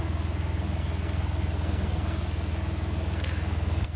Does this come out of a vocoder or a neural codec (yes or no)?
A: yes